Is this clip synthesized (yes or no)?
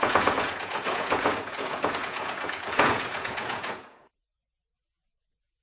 yes